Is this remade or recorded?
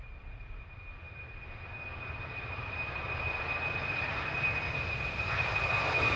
recorded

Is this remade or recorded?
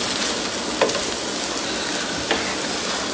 recorded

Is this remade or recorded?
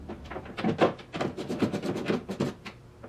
recorded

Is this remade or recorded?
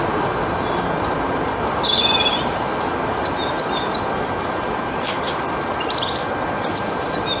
recorded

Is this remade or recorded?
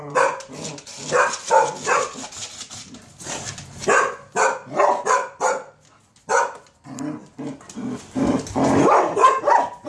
recorded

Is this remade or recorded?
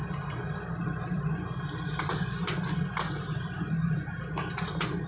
recorded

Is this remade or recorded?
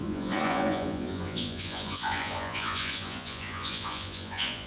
remade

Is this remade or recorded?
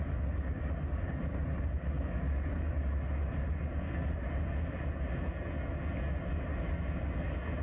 recorded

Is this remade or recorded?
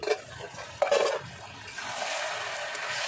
recorded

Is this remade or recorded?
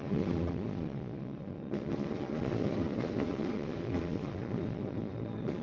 remade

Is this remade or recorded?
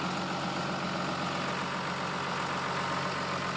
recorded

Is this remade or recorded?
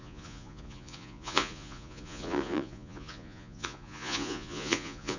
remade